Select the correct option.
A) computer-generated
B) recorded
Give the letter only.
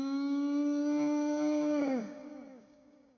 A